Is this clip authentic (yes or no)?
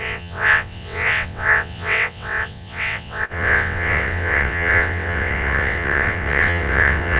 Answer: no